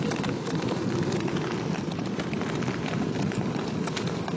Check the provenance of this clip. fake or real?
real